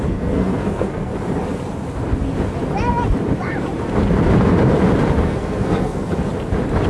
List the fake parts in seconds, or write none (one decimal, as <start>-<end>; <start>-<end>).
0.0-1.1; 5.2-6.3